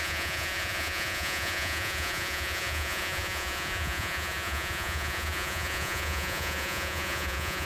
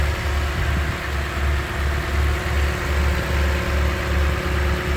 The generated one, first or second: first